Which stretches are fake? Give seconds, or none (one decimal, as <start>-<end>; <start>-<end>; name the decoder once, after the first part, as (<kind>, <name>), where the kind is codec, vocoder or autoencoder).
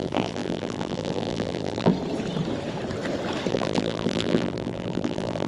0.0-1.9 (vocoder, BigVGAN v2); 3.5-5.5